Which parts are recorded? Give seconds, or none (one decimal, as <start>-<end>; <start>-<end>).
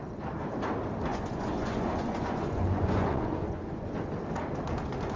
0.0-1.1; 4.0-5.2